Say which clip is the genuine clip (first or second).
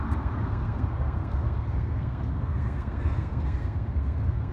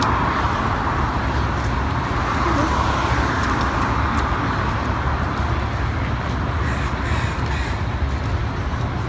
second